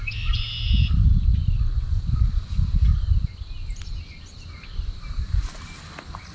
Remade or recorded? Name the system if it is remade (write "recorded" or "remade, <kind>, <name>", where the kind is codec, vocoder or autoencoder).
recorded